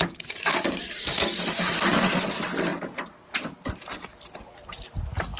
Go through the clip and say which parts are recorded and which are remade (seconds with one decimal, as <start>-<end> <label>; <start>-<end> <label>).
0.0-5.4 remade